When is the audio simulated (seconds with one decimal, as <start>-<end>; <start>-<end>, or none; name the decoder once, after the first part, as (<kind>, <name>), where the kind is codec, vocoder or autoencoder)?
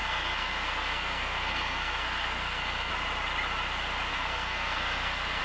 0.0-2.9 (codec, SNAC); 4.1-5.4